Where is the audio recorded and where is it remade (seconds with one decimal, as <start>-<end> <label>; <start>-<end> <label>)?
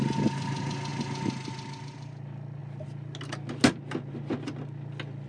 0.0-5.3 recorded